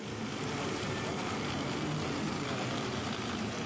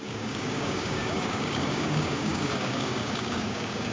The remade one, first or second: second